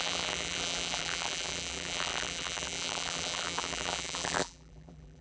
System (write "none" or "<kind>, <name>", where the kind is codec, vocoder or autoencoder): vocoder, BigVGAN v2